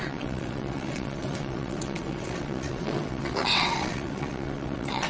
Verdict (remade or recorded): remade